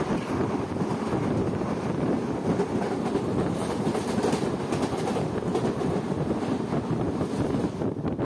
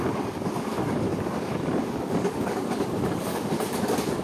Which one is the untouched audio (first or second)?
first